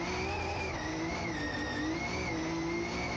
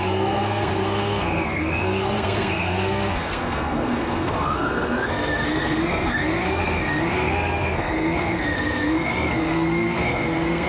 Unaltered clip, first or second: first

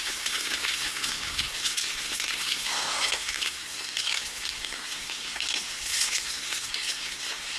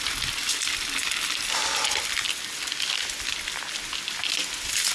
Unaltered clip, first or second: second